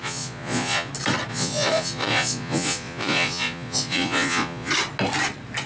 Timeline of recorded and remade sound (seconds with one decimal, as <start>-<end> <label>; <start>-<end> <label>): 0.0-0.9 remade; 0.9-1.3 recorded; 1.3-4.7 remade; 4.7-5.7 recorded